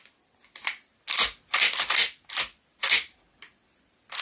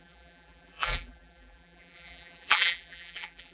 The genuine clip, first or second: first